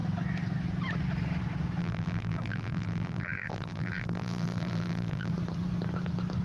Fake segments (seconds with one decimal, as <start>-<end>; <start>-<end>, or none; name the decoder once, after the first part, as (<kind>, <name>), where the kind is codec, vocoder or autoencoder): 1.8-5.3 (vocoder, BigVGAN v2)